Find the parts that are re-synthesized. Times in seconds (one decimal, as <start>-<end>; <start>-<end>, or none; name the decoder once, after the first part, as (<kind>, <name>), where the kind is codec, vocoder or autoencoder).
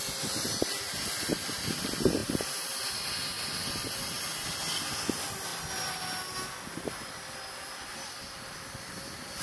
none